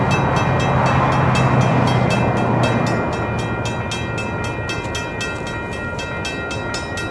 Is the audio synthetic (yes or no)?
no